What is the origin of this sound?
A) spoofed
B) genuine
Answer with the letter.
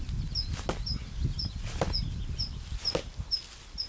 B